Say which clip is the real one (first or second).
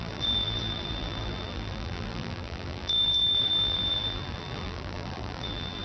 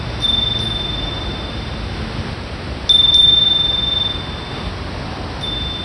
second